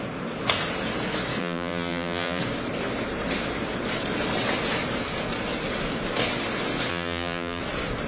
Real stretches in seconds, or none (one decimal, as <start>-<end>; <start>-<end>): 0.0-1.4; 2.4-6.9; 7.6-8.1